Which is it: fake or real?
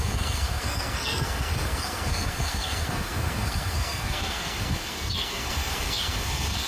fake